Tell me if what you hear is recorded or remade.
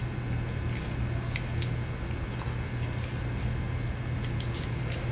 recorded